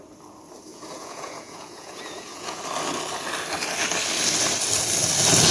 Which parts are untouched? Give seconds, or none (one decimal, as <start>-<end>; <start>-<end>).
0.0-0.7; 2.6-5.5